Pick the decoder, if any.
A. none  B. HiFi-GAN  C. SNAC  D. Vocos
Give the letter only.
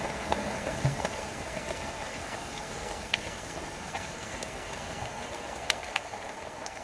C